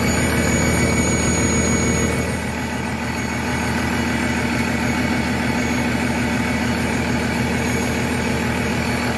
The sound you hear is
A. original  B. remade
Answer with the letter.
A